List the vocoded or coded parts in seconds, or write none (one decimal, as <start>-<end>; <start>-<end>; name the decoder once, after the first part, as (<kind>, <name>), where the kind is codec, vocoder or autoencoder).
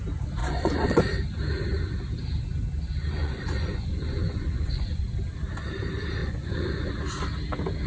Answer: 0.4-1.0 (vocoder, Vocos); 3.2-5.0; 6.2-6.9